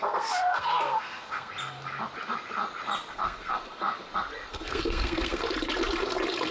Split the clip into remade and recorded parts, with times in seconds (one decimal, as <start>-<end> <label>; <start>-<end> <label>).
0.0-1.5 remade; 1.5-3.1 recorded; 3.1-3.8 remade; 3.8-4.5 recorded; 4.5-5.4 remade; 5.4-6.5 recorded